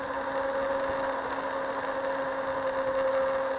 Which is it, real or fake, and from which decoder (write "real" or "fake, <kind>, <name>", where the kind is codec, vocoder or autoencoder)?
real